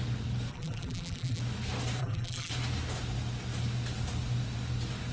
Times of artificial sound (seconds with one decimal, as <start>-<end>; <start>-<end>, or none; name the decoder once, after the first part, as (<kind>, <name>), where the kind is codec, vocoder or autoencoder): 0.5-1.4 (vocoder, BigVGAN v2); 2.0-2.5

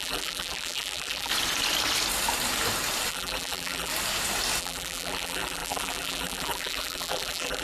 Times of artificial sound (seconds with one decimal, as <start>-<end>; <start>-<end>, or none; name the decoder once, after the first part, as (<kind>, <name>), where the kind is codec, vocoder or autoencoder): 0.0-1.3 (vocoder, BigVGAN v2); 3.1-3.9; 4.6-7.6

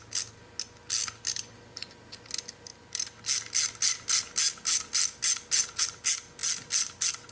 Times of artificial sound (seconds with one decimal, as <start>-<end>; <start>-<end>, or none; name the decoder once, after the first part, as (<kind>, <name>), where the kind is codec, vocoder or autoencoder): none

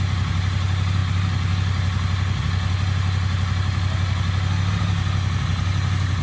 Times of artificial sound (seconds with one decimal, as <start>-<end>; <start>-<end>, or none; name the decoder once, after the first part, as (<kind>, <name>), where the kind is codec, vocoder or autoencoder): none

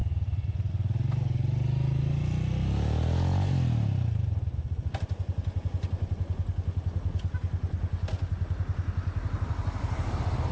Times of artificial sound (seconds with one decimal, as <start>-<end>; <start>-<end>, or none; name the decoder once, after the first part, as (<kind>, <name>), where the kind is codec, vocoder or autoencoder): none

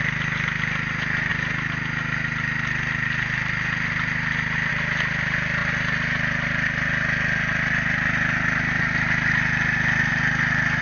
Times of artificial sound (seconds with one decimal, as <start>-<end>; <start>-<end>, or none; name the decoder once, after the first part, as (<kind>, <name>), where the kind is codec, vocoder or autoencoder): none